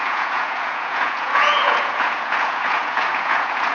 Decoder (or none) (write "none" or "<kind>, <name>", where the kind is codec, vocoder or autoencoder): vocoder, Vocos